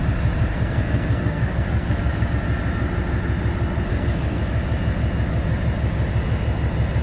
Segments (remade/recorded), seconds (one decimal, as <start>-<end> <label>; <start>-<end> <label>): 0.0-0.5 recorded; 0.5-2.3 remade; 2.3-3.9 recorded; 3.9-4.4 remade; 4.4-7.0 recorded